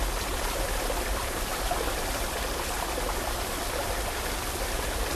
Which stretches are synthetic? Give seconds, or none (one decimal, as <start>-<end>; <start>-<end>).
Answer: 0.0-5.1